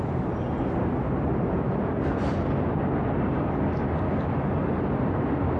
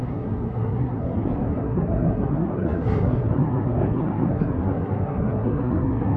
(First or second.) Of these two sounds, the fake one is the second